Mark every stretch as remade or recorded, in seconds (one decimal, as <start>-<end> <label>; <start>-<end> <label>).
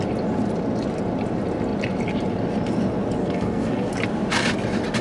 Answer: 0.0-3.2 recorded; 3.2-3.9 remade; 3.9-5.0 recorded